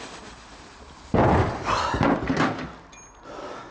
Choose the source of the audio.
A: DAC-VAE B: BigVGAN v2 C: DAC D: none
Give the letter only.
D